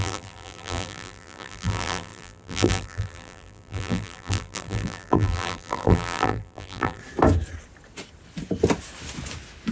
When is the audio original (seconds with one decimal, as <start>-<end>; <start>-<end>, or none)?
7.0-9.7